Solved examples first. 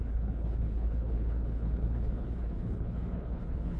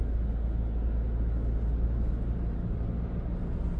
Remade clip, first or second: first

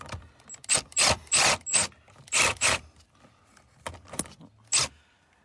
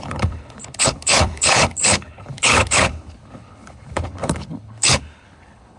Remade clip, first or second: second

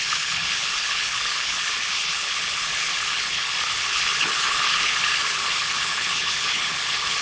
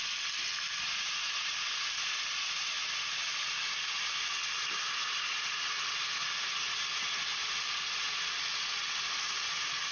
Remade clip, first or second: first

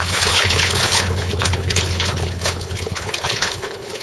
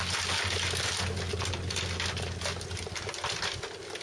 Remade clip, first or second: first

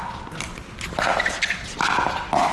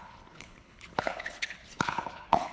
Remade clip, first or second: second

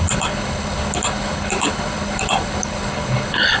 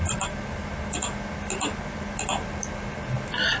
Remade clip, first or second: first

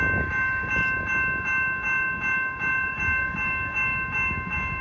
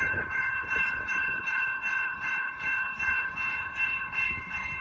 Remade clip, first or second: second